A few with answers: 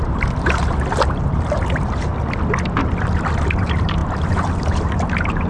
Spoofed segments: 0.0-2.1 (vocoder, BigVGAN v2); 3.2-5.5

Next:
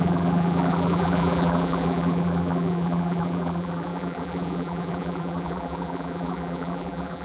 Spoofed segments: 0.0-7.2 (vocoder, BigVGAN v2)